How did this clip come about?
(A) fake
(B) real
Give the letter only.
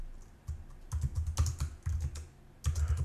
B